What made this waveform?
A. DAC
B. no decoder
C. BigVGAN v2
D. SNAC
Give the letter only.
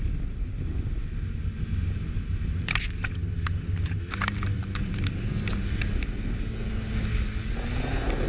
B